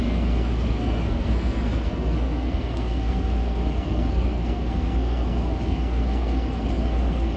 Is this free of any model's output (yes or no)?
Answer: no